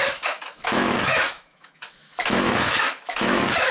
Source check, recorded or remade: remade